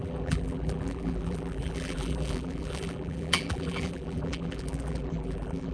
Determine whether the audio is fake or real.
fake